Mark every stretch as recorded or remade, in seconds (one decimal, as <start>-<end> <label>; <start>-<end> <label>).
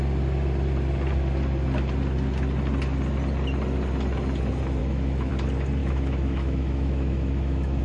0.0-4.8 recorded; 4.8-5.3 remade; 5.3-5.8 recorded; 5.8-7.8 remade